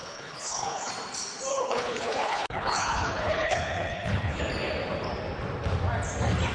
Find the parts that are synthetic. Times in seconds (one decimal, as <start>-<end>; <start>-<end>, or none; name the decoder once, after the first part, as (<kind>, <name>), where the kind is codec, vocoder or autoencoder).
0.0-0.9 (codec, HILCodec); 1.5-4.4